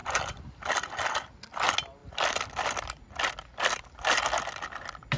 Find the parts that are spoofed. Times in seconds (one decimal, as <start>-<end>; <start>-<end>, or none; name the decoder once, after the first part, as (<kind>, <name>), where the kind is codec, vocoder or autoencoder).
none